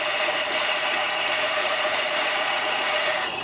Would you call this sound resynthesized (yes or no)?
yes